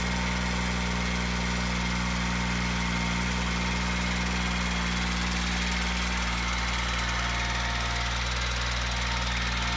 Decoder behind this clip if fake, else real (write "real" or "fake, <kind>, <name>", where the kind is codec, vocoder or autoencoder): real